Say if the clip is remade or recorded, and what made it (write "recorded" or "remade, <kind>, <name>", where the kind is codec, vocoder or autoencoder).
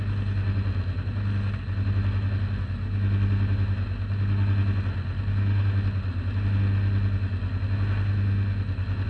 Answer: recorded